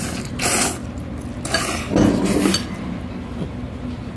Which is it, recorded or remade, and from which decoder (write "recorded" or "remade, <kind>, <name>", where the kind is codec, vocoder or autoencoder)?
recorded